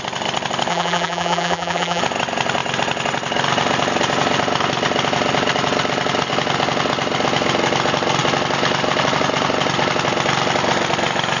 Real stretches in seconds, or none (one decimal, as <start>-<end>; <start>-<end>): 0.0-0.7; 2.0-11.4